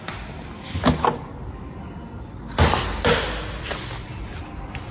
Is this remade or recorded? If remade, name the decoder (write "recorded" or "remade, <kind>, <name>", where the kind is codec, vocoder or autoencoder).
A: recorded